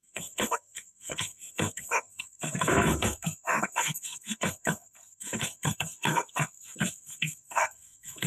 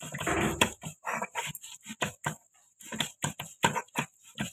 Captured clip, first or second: second